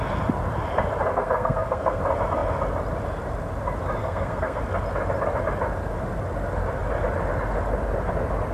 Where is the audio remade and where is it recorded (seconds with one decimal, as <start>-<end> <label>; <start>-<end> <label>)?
0.0-1.1 recorded; 1.1-2.0 remade; 2.0-4.0 recorded; 4.0-4.6 remade; 4.6-8.5 recorded